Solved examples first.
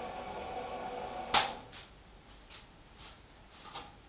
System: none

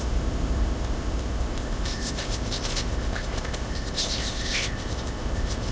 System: codec, ZipCodec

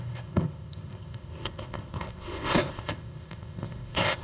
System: codec, ZipCodec